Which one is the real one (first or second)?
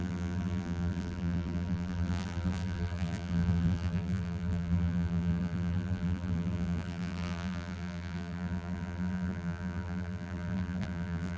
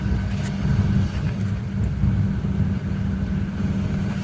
second